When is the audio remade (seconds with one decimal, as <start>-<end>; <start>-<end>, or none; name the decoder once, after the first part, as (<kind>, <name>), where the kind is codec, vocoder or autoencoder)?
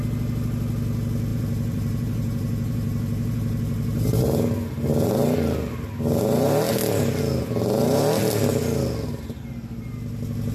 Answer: 1.3-4.2 (vocoder, BigVGAN v2)